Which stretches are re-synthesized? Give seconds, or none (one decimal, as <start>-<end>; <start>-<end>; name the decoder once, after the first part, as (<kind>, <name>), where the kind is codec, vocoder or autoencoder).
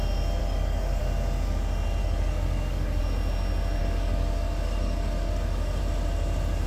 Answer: 0.4-1.0 (codec, DAC); 2.0-3.0; 3.8-5.8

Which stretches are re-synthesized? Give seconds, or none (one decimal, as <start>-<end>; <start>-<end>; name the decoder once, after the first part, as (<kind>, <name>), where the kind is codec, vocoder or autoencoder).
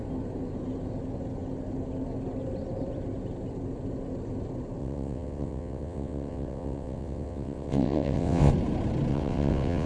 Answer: 4.8-8.5 (vocoder, WaveNeXt); 9.1-9.9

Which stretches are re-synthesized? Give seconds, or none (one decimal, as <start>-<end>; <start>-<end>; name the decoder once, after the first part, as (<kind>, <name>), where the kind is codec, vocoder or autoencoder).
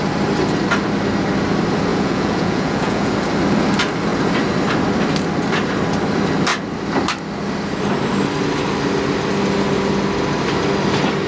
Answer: 1.9-3.1 (vocoder, Vocos)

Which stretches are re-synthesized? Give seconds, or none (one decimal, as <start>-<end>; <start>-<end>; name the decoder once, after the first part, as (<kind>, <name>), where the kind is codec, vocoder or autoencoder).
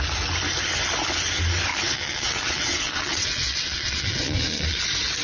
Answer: 1.7-4.8 (vocoder, WaveNeXt)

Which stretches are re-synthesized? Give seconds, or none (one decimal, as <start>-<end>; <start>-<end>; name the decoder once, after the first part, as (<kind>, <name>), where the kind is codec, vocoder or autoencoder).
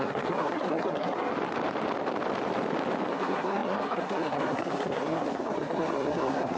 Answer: 0.0-1.3 (codec, SNAC); 3.1-6.6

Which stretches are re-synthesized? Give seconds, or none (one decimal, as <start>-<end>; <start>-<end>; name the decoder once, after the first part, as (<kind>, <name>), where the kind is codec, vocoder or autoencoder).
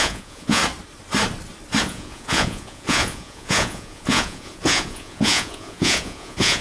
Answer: 0.0-0.6 (vocoder, Vocos); 1.8-6.6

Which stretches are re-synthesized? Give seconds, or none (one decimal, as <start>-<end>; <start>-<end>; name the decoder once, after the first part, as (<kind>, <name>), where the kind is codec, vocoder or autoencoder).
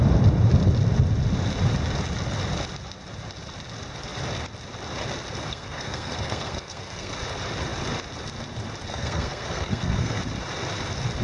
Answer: 5.5-7.1 (codec, SNAC); 8.9-10.2